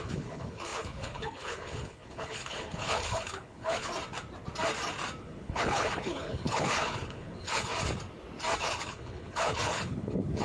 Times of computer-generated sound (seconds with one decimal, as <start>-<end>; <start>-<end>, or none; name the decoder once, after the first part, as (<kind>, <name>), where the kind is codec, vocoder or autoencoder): 0.0-3.9 (codec, HILCodec); 5.2-7.7; 8.6-10.4